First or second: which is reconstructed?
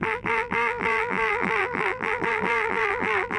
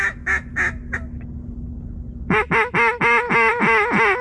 first